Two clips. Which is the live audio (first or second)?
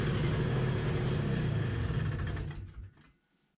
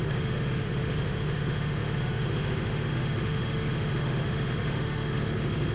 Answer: first